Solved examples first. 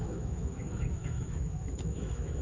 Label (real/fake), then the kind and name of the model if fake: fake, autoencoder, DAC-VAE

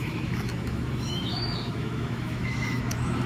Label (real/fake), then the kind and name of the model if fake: fake, autoencoder, DAC-VAE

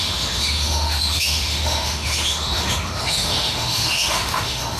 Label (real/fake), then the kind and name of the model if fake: fake, autoencoder, DAC-VAE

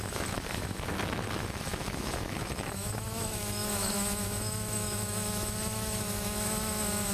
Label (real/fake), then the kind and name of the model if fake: fake, autoencoder, DAC-VAE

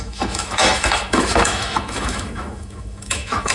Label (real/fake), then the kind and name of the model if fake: fake, autoencoder, DAC-VAE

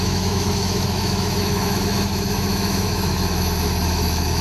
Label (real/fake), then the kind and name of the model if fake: fake, autoencoder, DAC-VAE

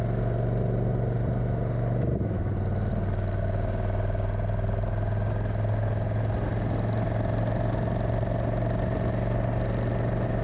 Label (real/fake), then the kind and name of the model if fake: real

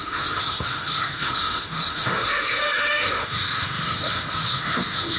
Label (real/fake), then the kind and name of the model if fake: fake, autoencoder, DAC-VAE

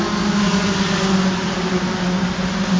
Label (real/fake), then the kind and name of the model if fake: real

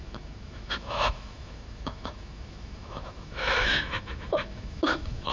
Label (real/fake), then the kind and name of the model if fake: fake, autoencoder, DAC-VAE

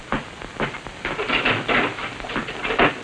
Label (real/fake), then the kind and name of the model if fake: real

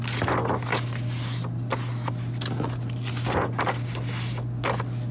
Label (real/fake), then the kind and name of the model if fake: real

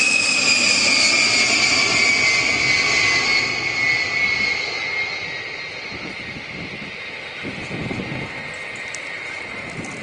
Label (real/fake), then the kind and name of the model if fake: real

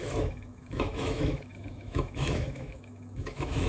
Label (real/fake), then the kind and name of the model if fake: fake, autoencoder, DAC-VAE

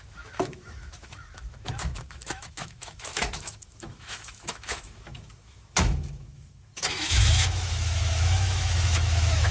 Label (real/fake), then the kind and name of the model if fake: fake, autoencoder, DAC-VAE